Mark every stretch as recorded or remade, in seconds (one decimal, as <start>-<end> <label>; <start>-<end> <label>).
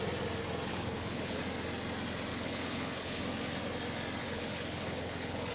0.0-0.7 recorded; 0.7-1.4 remade; 1.4-2.3 recorded; 2.3-3.2 remade; 3.2-4.2 recorded; 4.2-5.5 remade